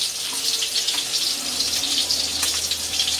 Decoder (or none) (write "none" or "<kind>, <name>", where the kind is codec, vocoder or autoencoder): none